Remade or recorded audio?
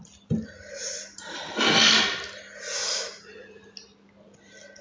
recorded